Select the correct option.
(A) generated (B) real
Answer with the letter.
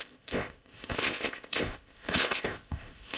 A